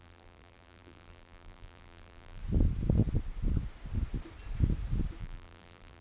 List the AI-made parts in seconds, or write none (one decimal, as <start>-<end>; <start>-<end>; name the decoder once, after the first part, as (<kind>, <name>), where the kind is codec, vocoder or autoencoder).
0.0-2.4 (vocoder, BigVGAN v2); 5.2-6.0